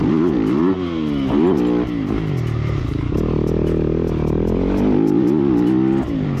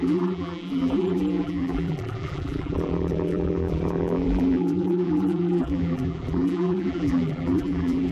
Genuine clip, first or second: first